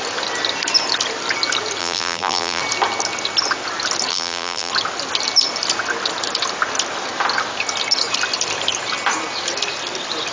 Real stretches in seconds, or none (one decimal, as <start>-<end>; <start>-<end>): 0.0-1.8; 2.6-4.1; 4.7-10.3